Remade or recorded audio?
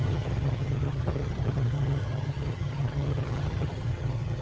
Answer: remade